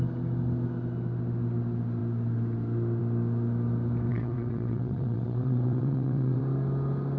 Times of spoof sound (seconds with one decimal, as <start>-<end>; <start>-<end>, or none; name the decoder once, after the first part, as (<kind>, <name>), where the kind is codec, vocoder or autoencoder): 4.1-6.4 (vocoder, WaveNeXt)